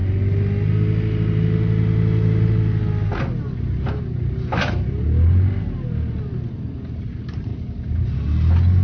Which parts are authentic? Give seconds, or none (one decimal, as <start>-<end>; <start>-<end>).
0.0-7.5; 8.1-8.8